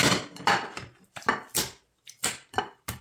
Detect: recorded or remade remade